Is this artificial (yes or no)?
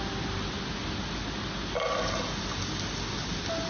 no